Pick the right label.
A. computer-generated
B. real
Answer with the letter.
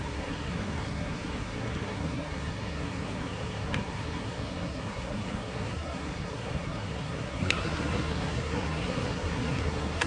A